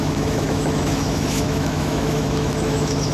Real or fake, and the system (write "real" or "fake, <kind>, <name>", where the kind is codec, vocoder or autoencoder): fake, autoencoder, DAC-VAE